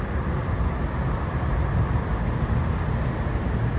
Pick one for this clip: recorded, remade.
recorded